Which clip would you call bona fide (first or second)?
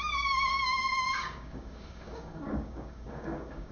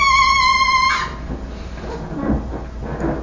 second